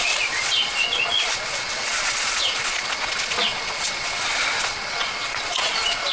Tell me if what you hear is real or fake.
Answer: fake